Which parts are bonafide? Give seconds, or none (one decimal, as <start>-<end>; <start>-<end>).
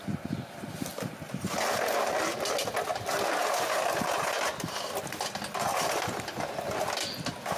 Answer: 0.0-0.9; 1.6-7.6